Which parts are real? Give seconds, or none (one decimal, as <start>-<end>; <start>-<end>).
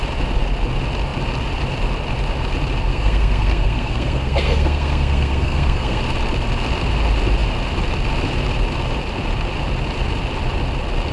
0.0-2.9; 6.0-11.1